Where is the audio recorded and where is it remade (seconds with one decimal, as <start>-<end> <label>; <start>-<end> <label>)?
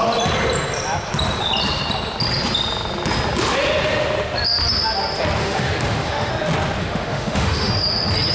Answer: 0.0-5.4 recorded; 5.4-6.3 remade; 6.3-6.8 recorded; 6.8-7.7 remade; 7.7-8.3 recorded